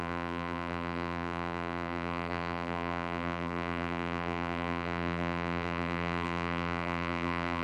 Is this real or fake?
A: fake